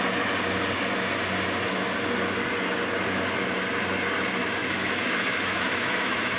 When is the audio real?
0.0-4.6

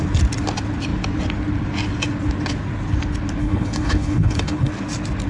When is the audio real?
0.0-3.4; 4.7-5.3

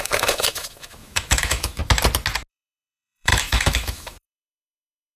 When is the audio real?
1.8-2.5

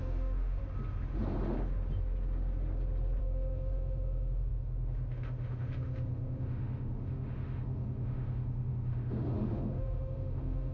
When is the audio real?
0.6-3.2

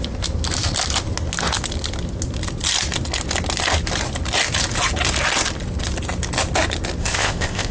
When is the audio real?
0.0-7.0

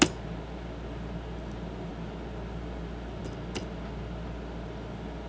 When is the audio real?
0.0-5.3

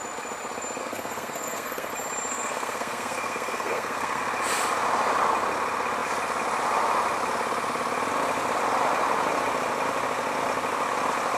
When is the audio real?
0.0-0.8; 1.9-2.3; 4.2-11.4